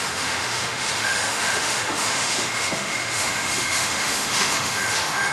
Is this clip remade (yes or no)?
yes